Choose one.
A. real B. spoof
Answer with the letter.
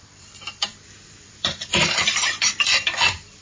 B